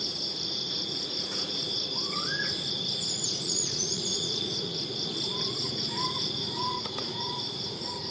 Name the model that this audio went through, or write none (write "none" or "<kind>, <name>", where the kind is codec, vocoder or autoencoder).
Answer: vocoder, Vocos